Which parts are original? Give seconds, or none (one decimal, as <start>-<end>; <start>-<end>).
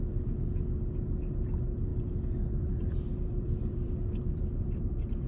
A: 0.0-1.9; 3.9-5.3